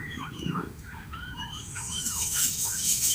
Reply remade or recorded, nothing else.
remade